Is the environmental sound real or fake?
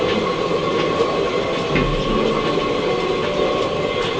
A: real